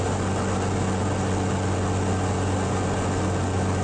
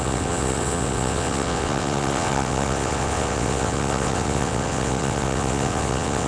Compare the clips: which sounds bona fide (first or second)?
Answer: first